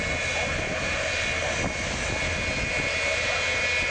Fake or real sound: real